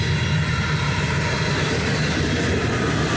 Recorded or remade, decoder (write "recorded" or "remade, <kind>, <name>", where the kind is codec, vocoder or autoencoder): recorded